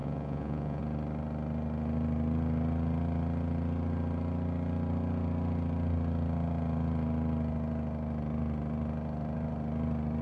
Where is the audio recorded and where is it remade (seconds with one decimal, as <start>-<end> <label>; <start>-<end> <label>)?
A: 0.0-0.8 remade; 0.8-10.2 recorded